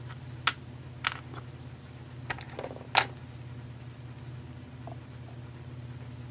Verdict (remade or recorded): recorded